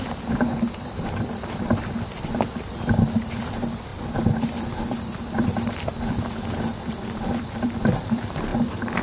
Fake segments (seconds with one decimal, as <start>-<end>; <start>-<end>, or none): 0.0-9.0